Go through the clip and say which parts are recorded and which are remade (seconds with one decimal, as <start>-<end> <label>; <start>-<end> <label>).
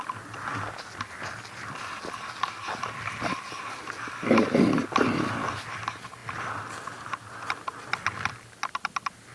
0.0-9.3 recorded